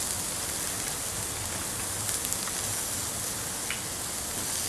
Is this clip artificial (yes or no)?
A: no